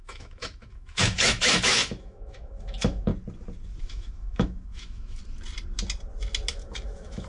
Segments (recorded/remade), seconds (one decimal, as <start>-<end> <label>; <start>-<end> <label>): 0.0-3.1 remade; 3.1-3.8 recorded; 3.8-5.2 remade; 5.2-6.5 recorded; 6.5-7.3 remade